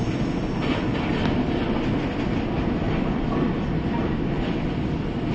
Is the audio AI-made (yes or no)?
no